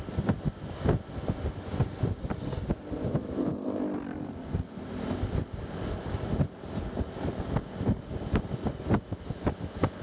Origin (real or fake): real